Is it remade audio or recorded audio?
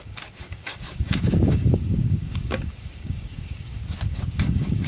remade